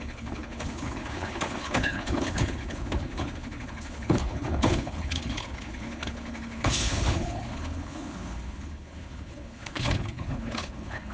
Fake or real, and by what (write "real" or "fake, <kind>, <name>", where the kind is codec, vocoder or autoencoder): fake, codec, HILCodec